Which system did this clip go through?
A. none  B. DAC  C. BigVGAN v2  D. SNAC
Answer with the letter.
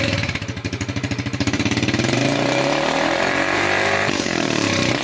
C